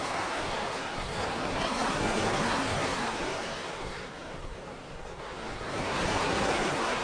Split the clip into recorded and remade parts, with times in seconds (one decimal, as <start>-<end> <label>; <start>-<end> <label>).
0.0-7.0 remade